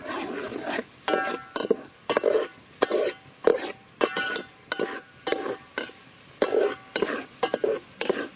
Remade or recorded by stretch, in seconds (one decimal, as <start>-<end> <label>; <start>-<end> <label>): 0.0-3.5 recorded; 3.5-6.1 remade; 6.1-8.4 recorded